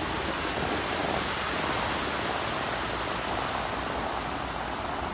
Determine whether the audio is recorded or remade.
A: recorded